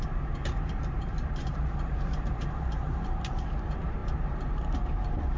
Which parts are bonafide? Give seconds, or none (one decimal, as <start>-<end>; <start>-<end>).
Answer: none